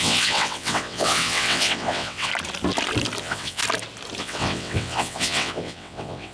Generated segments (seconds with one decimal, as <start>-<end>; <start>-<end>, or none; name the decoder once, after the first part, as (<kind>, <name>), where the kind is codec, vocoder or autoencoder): 0.0-2.3 (vocoder, WaveNeXt); 3.2-3.6; 4.2-6.3